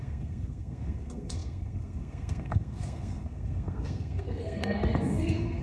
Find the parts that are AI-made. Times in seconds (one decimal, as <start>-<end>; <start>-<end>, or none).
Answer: 0.0-5.6